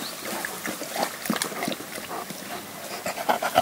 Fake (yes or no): no